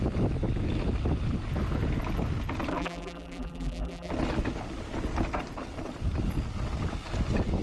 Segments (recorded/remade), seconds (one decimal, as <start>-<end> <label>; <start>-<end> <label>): 0.0-2.7 recorded; 2.7-4.1 remade; 4.1-7.6 recorded